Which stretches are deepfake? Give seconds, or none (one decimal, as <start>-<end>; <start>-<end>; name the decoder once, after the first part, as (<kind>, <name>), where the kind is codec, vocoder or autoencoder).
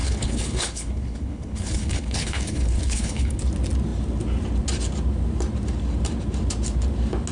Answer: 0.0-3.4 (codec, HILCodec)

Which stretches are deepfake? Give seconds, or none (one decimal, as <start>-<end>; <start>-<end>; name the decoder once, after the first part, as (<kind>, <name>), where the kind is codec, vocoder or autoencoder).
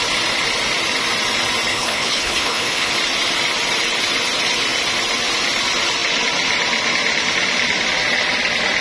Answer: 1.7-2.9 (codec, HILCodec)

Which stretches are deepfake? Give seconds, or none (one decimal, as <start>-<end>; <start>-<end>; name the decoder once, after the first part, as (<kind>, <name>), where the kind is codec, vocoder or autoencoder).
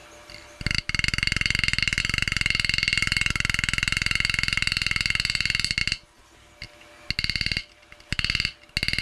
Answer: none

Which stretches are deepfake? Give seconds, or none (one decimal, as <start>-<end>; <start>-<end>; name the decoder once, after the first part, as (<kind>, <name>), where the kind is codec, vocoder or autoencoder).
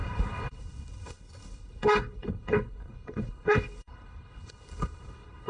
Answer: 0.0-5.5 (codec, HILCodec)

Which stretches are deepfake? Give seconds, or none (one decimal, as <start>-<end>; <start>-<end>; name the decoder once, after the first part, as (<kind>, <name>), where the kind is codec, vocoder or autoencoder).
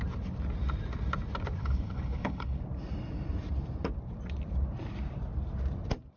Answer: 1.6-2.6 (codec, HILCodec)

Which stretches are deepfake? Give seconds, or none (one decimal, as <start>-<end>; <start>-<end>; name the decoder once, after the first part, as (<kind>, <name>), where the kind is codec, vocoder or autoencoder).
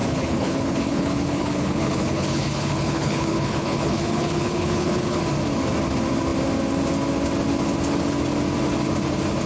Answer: 0.0-5.2 (codec, HILCodec)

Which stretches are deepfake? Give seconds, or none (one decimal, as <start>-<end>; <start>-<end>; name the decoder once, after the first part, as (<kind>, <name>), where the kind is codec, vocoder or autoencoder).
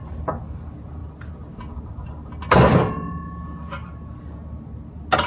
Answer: none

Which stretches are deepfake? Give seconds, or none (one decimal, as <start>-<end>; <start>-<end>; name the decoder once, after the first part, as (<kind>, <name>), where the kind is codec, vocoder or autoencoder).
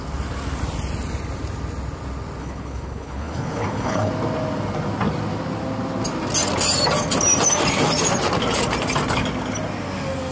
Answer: 2.4-4.1 (codec, HILCodec)